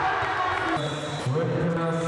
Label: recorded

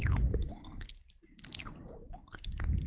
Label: remade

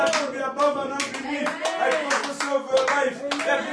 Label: recorded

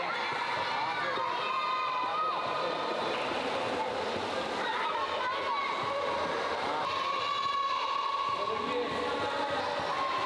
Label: recorded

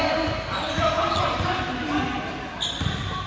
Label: recorded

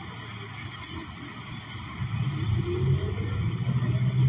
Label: recorded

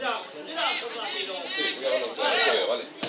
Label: recorded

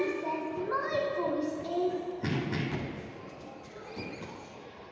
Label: recorded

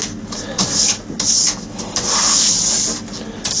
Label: recorded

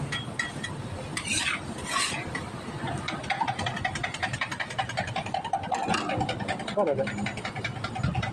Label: recorded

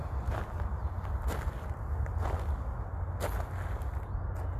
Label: recorded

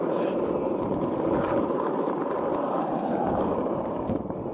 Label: remade